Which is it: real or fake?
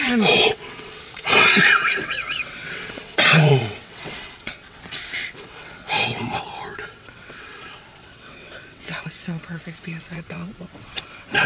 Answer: fake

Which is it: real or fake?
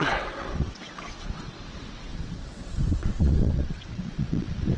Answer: fake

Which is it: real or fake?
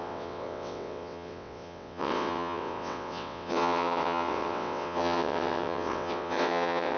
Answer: fake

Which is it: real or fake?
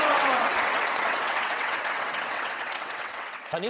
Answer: fake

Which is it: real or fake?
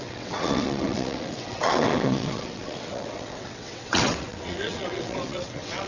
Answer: fake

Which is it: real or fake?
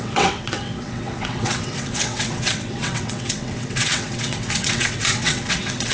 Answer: fake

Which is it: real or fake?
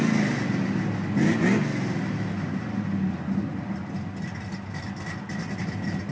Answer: real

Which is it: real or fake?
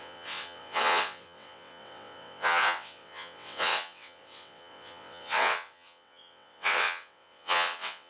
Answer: fake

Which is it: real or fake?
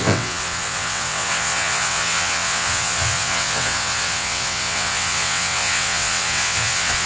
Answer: fake